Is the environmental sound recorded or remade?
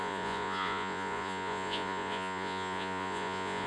remade